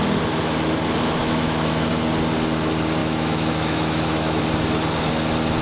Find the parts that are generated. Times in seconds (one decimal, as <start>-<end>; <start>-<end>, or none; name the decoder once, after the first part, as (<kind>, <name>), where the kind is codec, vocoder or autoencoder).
1.2-1.9 (autoencoder, DAC-VAE); 3.0-4.4